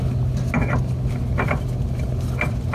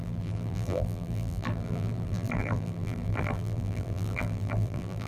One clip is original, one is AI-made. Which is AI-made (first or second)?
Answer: second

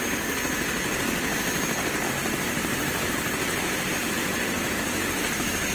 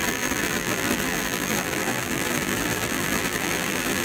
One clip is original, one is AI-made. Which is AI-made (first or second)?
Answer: second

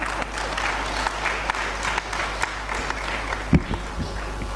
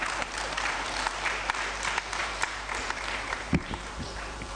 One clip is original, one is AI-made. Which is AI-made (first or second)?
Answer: second